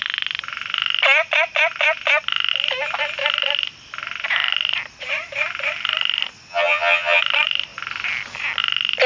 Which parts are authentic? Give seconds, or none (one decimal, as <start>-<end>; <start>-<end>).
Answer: 0.0-6.5; 7.2-9.1